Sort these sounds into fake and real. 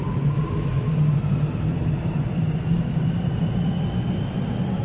fake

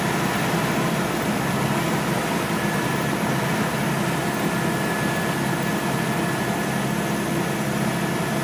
real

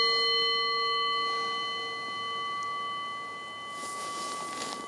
real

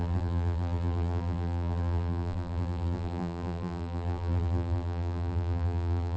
fake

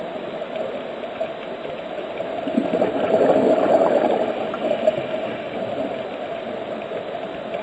real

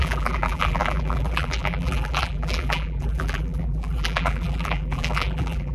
fake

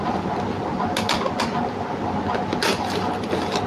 real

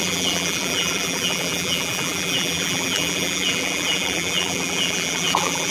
fake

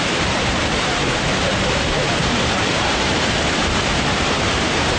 fake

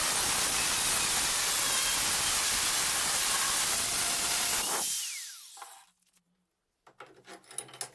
real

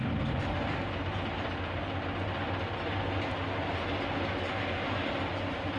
real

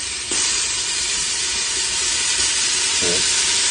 fake